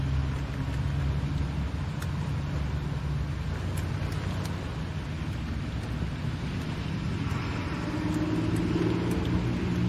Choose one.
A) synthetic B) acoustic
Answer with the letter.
B